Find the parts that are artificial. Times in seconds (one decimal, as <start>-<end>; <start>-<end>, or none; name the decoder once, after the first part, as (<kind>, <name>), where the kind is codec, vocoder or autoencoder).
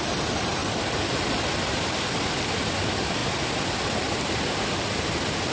0.6-2.5 (vocoder, BigVGAN v2); 3.2-5.0